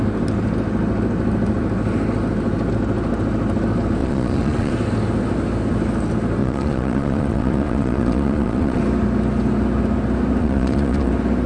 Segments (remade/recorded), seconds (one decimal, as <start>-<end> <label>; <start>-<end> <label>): 0.0-4.0 recorded; 4.0-4.7 remade; 4.7-6.4 recorded; 6.4-8.8 remade; 8.8-10.4 recorded; 10.4-11.1 remade; 11.1-11.5 recorded